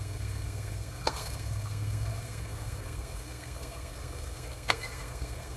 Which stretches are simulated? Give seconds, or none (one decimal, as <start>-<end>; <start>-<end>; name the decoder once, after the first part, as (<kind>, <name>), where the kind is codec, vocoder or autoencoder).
0.0-5.6 (codec, SNAC)